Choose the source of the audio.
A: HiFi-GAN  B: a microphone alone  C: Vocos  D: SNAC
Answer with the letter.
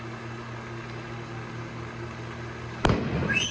B